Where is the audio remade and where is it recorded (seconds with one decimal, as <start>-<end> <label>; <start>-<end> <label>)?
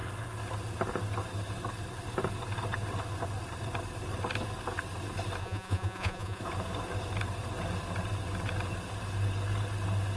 0.0-5.4 recorded; 5.4-6.4 remade; 6.4-10.2 recorded